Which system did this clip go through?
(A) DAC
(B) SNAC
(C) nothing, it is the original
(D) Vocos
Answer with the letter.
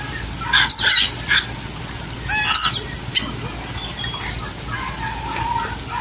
C